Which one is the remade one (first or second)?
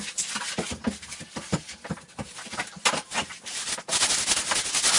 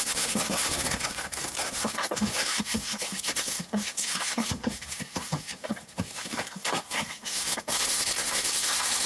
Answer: second